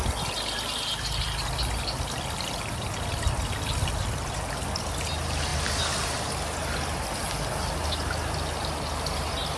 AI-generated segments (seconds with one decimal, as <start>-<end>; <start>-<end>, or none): none